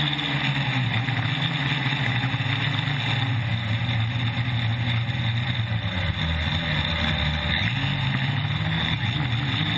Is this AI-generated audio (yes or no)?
no